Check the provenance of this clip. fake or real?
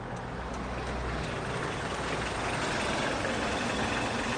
real